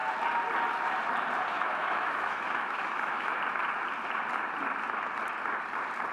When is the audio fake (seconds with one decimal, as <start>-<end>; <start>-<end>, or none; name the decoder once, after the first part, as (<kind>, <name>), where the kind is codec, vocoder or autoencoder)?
1.5-3.4 (autoencoder, DAC-VAE)